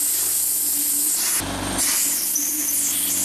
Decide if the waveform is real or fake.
real